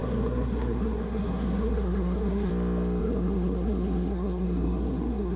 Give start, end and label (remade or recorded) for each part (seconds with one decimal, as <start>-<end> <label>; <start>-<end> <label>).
0.0-2.5 remade; 2.5-3.0 recorded; 3.0-5.4 remade